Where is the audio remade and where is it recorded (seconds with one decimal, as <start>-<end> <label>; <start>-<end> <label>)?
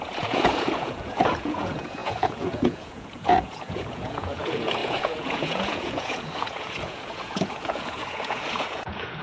0.0-9.2 remade